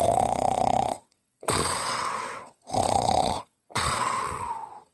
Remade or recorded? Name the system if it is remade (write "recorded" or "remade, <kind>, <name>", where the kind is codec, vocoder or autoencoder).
remade, vocoder, WaveNeXt